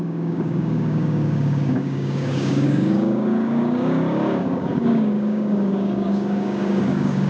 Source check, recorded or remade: remade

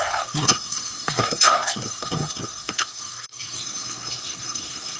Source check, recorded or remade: remade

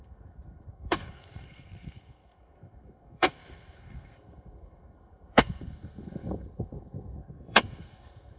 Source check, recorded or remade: remade